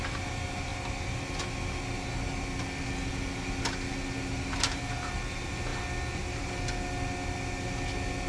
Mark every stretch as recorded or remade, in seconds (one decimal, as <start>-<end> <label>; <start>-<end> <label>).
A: 0.0-8.3 recorded